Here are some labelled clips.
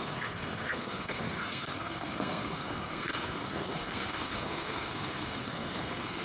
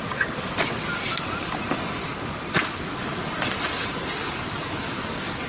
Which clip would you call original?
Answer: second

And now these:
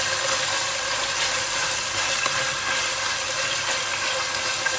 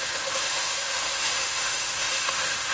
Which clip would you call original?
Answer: first